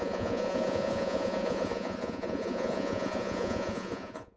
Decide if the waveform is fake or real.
fake